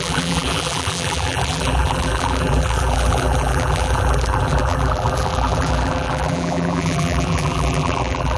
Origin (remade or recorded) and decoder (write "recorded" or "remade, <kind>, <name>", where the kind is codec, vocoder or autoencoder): remade, vocoder, BigVGAN v2